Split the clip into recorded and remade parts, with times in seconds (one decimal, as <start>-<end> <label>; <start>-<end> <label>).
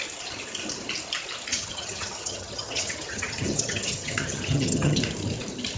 0.0-1.5 recorded; 1.5-5.0 remade; 5.0-5.8 recorded